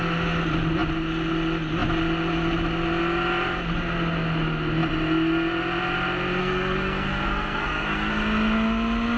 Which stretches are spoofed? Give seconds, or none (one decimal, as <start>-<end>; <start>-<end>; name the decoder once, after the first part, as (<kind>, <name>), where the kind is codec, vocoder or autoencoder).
6.4-8.1 (codec, SNAC)